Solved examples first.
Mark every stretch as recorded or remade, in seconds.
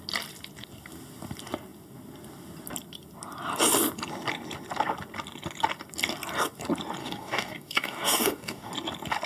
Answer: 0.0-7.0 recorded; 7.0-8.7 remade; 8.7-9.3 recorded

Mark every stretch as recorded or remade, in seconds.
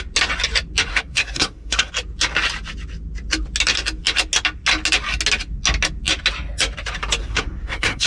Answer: 0.0-0.9 recorded; 0.9-1.9 remade; 1.9-7.2 recorded; 7.2-8.1 remade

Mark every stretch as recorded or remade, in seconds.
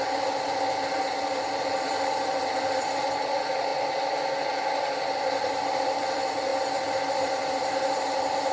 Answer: 0.0-3.7 remade; 3.7-5.6 recorded; 5.6-8.5 remade